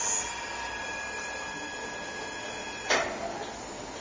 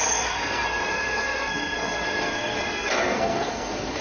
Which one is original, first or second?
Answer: first